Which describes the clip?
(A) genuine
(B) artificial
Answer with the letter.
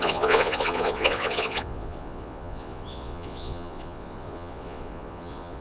B